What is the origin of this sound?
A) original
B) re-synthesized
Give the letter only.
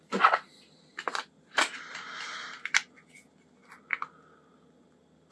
A